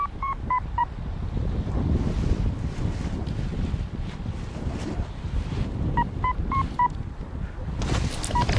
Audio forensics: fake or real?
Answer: fake